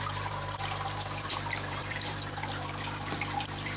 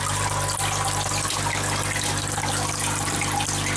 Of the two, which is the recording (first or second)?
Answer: second